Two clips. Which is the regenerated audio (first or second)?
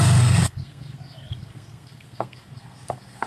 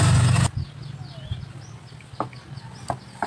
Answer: first